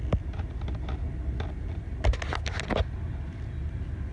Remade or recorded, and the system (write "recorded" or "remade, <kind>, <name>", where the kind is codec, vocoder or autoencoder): recorded